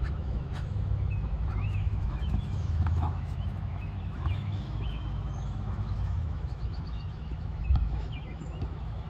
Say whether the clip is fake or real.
fake